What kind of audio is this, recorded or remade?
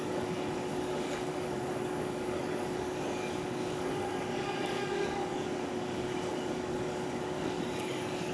remade